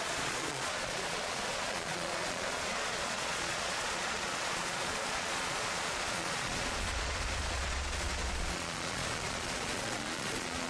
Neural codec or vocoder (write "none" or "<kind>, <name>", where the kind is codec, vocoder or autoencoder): vocoder, Vocos